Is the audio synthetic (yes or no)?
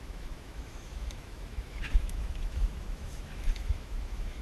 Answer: yes